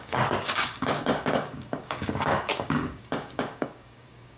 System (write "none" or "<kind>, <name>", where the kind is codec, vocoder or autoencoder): codec, DAC